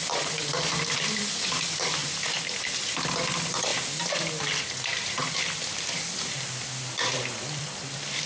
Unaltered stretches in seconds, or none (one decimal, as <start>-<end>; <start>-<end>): 3.7-5.3